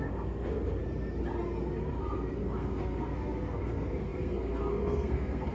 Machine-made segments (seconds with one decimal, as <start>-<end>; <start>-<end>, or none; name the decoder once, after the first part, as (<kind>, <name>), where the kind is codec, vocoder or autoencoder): 0.0-0.8 (codec, SNAC); 1.9-5.5